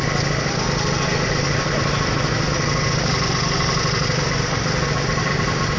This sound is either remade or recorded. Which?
recorded